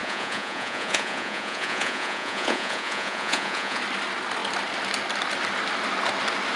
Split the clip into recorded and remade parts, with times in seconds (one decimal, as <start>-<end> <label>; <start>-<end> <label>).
0.0-3.8 remade; 3.8-6.6 recorded